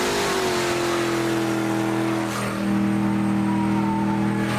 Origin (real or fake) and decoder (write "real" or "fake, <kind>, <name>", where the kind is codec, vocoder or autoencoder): real